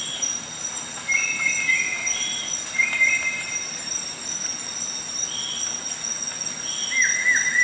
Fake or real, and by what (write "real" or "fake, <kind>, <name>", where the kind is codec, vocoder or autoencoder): real